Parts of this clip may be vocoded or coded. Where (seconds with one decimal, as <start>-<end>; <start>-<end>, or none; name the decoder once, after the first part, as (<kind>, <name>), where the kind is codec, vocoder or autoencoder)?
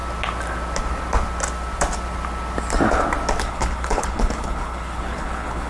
3.4-5.7 (codec, HILCodec)